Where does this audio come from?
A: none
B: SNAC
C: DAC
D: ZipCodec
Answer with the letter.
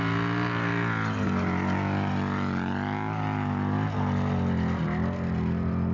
A